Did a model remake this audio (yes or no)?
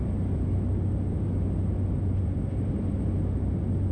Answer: no